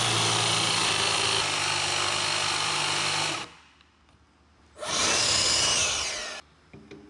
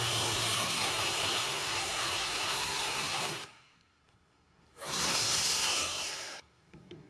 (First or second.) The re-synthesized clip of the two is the second